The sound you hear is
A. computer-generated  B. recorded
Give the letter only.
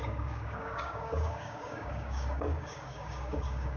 A